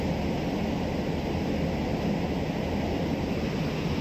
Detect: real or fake real